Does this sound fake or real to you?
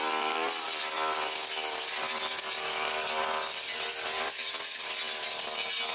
real